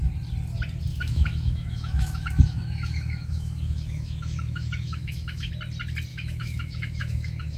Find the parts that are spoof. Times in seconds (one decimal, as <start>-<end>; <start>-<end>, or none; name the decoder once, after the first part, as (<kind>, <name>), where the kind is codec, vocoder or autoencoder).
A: 0.9-5.5 (autoencoder, DAC-VAE); 6.1-7.6